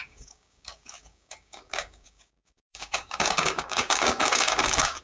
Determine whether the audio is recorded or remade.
remade